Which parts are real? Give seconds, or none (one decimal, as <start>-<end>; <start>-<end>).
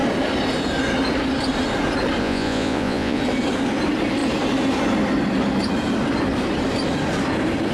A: 0.0-2.2; 3.2-7.7